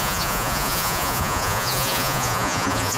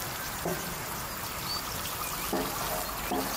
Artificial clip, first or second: first